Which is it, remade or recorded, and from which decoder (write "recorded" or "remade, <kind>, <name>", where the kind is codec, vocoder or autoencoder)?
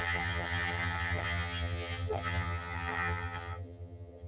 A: remade, vocoder, HiFi-GAN